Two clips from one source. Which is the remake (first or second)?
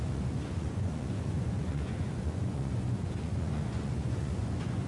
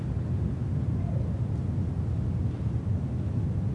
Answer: first